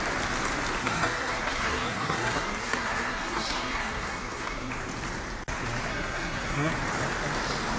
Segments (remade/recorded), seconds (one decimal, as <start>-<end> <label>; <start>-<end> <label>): 0.0-0.8 recorded; 0.8-4.7 remade; 4.7-5.9 recorded; 5.9-6.7 remade; 6.7-7.8 recorded